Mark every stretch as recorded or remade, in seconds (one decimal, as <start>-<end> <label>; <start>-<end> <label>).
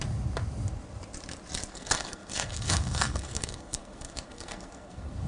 0.0-1.7 recorded; 1.7-5.3 remade